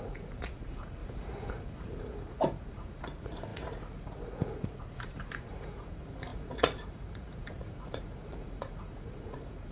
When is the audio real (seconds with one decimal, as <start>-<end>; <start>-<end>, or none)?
none